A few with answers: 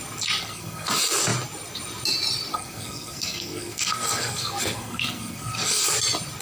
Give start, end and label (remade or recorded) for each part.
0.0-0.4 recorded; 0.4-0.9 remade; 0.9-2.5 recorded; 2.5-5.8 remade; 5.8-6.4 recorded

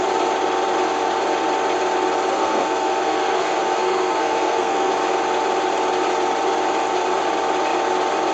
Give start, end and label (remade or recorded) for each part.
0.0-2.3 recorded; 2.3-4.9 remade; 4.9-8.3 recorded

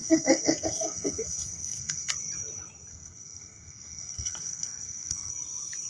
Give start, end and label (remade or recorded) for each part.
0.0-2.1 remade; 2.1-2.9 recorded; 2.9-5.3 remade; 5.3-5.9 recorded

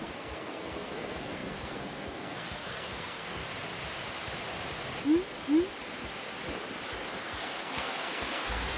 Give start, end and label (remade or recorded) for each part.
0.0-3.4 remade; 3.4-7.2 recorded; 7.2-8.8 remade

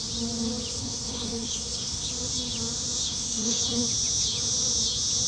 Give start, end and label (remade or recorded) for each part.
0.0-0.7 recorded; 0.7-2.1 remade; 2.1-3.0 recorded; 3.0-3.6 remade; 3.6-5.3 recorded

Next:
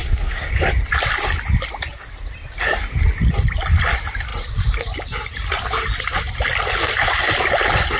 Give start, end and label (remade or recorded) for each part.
0.0-0.5 remade; 0.5-8.0 recorded